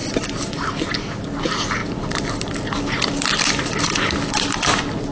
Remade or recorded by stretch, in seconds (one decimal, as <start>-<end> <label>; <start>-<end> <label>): 0.0-5.1 recorded